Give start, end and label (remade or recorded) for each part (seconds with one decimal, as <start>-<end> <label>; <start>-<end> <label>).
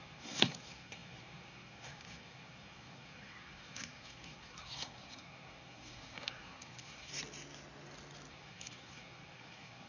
0.0-7.1 remade; 7.1-8.3 recorded; 8.3-9.9 remade